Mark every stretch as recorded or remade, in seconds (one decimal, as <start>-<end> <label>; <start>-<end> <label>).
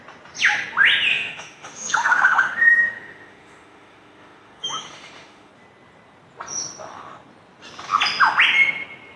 0.0-1.1 recorded; 1.1-5.5 remade; 5.5-9.2 recorded